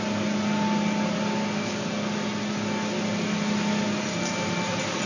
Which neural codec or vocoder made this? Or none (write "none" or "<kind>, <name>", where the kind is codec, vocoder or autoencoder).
none